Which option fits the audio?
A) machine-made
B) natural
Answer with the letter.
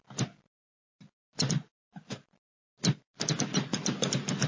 B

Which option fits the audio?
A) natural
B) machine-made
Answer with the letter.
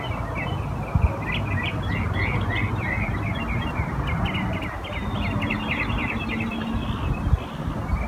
A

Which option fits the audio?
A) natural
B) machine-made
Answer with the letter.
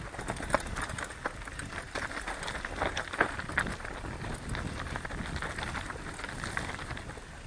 A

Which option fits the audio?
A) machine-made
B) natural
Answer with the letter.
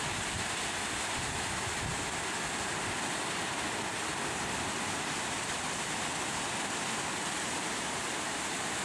B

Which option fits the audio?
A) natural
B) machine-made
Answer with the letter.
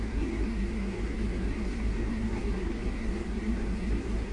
B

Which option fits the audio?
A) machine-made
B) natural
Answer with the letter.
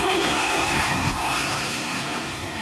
A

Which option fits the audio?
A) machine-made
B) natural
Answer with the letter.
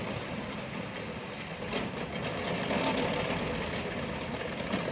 B